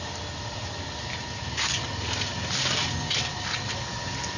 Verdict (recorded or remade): recorded